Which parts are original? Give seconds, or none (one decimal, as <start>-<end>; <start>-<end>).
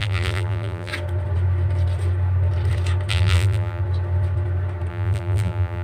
0.9-3.1; 3.8-4.9